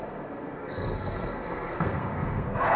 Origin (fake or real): fake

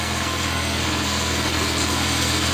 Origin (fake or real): fake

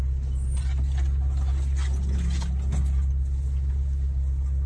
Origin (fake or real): real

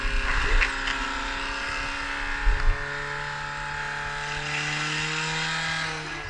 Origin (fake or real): real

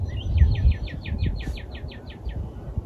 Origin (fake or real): real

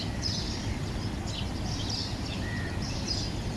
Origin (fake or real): real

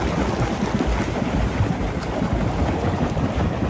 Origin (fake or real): real